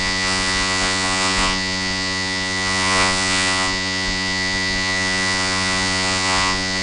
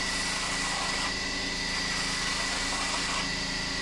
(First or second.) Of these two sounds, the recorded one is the second